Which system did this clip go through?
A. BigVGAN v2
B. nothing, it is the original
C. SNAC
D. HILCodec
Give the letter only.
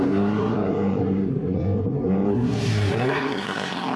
C